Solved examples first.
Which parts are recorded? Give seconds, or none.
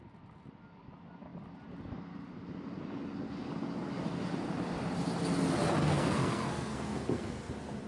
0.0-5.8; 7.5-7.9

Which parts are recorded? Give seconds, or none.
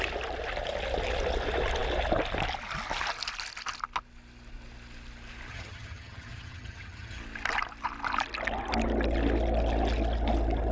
0.0-5.5; 7.2-10.7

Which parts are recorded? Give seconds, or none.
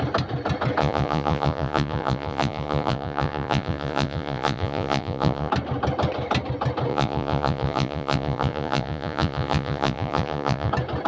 0.0-0.8; 5.5-6.9; 10.7-11.1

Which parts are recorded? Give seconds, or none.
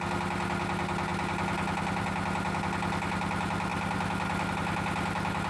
0.0-5.5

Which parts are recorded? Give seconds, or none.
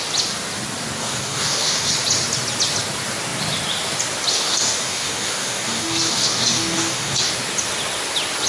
0.0-1.0; 1.9-4.3; 7.3-8.5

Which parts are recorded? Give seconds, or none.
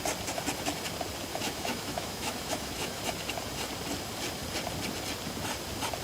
0.0-1.3; 3.0-6.0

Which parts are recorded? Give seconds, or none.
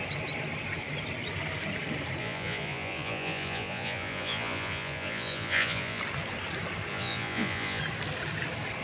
0.0-2.2; 6.0-6.9; 7.8-8.8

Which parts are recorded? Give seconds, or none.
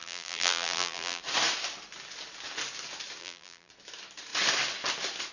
1.2-3.2; 3.7-5.3